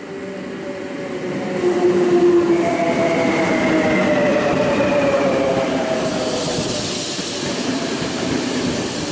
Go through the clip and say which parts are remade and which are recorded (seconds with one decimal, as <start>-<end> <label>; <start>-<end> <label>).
0.0-4.3 recorded; 4.3-5.1 remade; 5.1-9.1 recorded